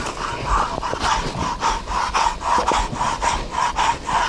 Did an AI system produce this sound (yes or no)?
no